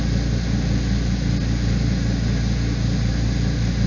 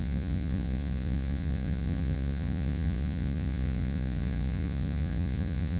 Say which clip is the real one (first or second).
first